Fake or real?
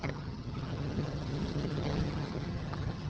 fake